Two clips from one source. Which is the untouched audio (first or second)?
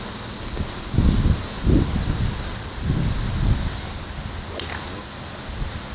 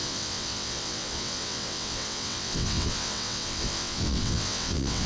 first